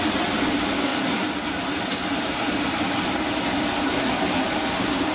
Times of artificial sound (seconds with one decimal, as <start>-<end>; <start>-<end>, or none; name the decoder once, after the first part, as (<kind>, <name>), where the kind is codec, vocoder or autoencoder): none